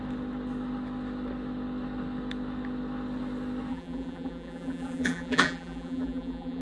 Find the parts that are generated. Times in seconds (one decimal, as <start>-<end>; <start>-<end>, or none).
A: 3.7-6.6